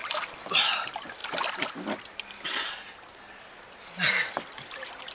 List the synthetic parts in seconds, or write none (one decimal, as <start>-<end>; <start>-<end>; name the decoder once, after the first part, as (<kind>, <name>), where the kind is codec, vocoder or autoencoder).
none